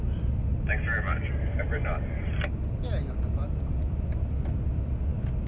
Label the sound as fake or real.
real